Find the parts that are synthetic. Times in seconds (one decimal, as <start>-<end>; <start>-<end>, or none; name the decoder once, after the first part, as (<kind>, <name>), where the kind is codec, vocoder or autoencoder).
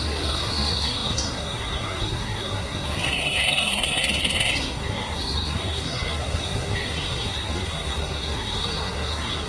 0.0-9.5 (codec, SNAC)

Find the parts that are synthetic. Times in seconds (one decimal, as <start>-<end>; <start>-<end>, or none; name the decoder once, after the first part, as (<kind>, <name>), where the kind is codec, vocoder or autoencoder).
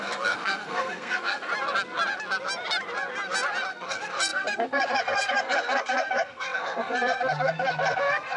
0.0-1.5 (codec, SNAC); 3.7-8.4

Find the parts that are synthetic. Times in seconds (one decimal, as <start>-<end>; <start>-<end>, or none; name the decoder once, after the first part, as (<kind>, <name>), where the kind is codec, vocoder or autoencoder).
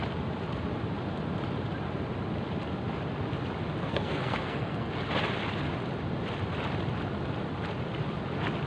3.8-4.9 (codec, SNAC)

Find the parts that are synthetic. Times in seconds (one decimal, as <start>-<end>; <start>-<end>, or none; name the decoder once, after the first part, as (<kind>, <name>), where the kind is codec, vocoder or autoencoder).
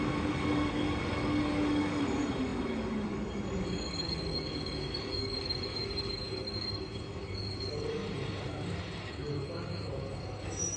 0.0-10.8 (codec, DAC)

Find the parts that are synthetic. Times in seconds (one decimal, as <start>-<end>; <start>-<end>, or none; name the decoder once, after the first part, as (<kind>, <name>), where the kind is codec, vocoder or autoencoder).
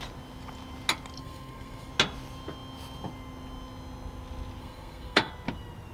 1.2-1.9 (codec, SNAC); 4.6-5.3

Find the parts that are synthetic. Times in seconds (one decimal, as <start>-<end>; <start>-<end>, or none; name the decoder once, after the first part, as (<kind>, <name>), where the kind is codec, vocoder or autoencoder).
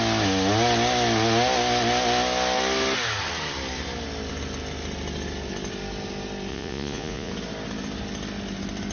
6.5-7.3 (vocoder, Vocos)